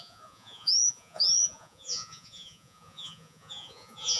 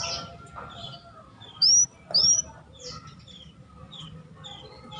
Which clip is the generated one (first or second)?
first